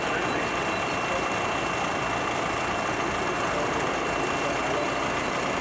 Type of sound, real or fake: real